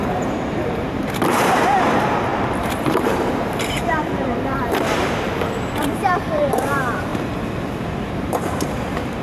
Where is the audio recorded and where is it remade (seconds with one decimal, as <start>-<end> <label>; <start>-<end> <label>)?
0.0-7.1 remade; 7.1-7.7 recorded; 7.7-9.2 remade